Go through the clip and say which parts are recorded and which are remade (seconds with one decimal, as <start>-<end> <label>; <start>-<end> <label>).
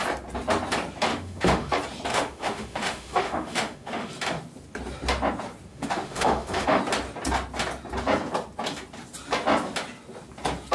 0.0-1.1 recorded; 1.1-1.7 remade; 1.7-2.1 recorded; 2.1-4.1 remade; 4.1-5.7 recorded; 5.7-6.8 remade; 6.8-10.7 recorded